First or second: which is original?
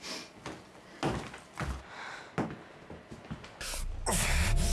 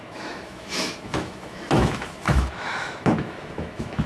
first